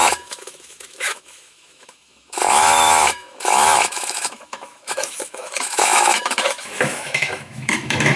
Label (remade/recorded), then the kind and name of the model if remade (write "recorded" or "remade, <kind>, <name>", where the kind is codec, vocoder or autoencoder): remade, autoencoder, DAC-VAE